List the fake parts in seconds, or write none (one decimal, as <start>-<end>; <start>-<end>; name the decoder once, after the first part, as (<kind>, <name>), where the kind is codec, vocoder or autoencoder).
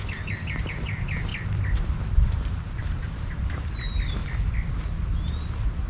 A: 0.0-5.9 (vocoder, BigVGAN v2)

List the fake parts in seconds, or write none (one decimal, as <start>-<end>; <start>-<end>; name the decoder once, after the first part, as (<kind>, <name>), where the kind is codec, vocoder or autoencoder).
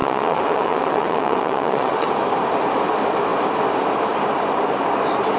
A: 0.0-2.1 (vocoder, WaveNeXt)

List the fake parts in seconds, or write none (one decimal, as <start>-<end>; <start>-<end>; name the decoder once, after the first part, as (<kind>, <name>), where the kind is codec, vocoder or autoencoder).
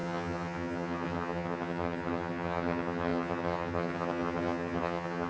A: 0.0-5.3 (vocoder, HiFi-GAN)